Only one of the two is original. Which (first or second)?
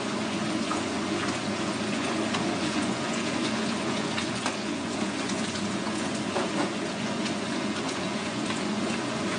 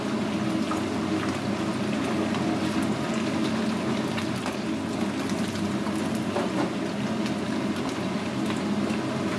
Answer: second